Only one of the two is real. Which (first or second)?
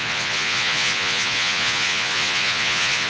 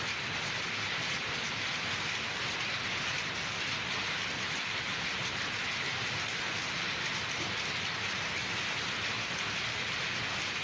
second